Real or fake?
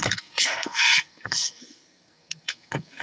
fake